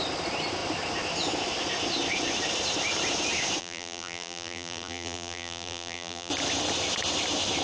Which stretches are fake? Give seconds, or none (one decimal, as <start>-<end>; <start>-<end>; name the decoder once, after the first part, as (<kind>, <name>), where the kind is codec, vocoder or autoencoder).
3.6-6.3 (vocoder, BigVGAN v2)